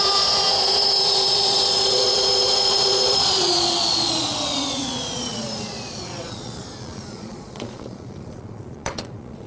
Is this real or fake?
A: fake